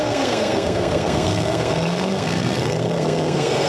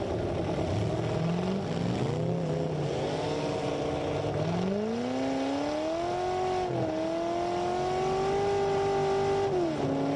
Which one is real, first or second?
second